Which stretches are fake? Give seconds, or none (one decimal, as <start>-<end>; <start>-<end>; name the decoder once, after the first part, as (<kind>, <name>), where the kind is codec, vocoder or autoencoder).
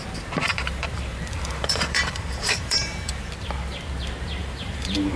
0.5-3.3 (vocoder, BigVGAN v2); 4.4-5.2